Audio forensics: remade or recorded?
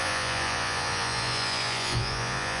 remade